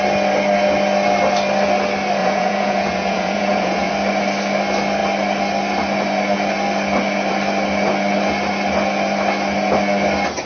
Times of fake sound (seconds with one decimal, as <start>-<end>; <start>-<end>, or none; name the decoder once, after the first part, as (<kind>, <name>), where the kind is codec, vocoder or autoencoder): 2.2-3.9 (vocoder, Vocos)